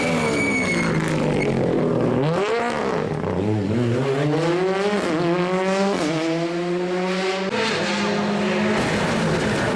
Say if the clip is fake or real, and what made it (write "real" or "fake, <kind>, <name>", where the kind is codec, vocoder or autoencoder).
real